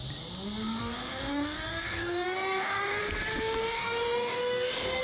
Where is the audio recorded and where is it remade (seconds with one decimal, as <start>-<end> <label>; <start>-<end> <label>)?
0.0-0.8 recorded; 0.8-3.0 remade; 3.0-3.6 recorded; 3.6-5.0 remade